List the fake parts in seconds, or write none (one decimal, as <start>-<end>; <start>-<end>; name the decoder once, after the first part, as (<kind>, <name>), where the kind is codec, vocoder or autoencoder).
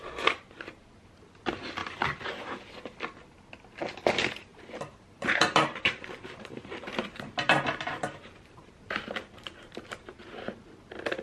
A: 1.8-2.7 (vocoder, BigVGAN v2); 4.5-9.7